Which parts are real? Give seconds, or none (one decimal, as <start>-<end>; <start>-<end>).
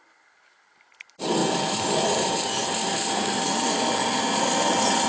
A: 0.0-5.1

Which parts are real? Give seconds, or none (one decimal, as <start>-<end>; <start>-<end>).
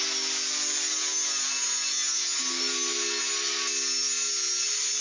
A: 0.0-5.0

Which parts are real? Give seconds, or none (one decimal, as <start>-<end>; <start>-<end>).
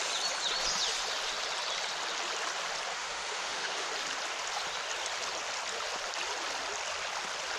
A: 0.0-2.9; 3.9-7.6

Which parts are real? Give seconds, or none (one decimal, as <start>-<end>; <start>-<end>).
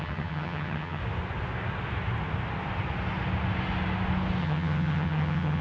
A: 1.0-4.4